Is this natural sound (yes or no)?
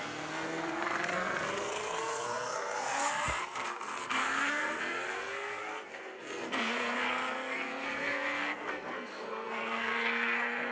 no